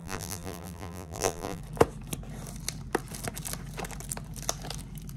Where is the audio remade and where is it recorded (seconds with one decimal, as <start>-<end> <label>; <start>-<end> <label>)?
0.0-1.6 remade; 1.6-5.2 recorded